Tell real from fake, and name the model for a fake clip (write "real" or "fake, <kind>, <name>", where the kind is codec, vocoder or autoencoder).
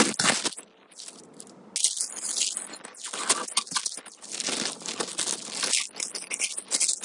real